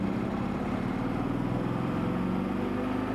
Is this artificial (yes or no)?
no